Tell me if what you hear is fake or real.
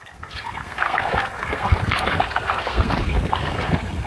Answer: fake